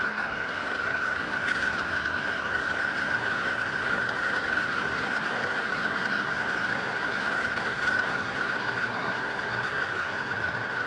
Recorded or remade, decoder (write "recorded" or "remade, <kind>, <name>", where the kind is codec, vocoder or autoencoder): remade, codec, SNAC